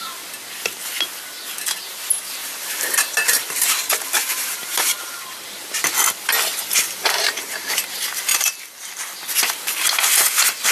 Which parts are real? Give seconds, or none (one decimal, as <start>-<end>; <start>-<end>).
0.0-2.4; 5.1-7.0; 7.7-8.3; 8.8-10.7